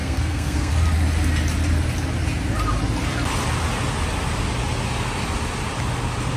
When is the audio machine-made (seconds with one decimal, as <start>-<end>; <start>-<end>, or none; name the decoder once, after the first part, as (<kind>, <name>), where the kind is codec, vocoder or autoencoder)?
0.0-0.7 (codec, SNAC)